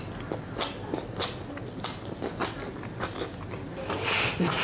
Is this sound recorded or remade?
recorded